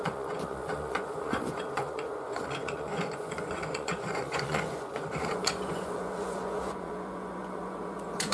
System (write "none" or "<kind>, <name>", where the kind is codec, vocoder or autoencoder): vocoder, Vocos